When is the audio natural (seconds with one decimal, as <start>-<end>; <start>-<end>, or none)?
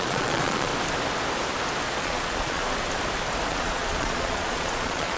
0.7-2.0; 2.6-3.5